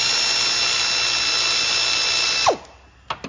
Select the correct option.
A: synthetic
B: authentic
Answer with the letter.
B